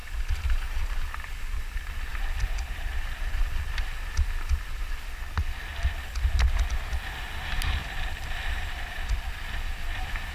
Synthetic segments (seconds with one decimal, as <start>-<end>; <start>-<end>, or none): 2.1-3.9; 5.7-6.3; 7.8-9.3